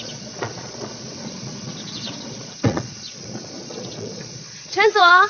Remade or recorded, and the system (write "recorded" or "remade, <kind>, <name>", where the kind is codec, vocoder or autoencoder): remade, vocoder, Vocos